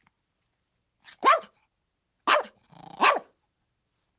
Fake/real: real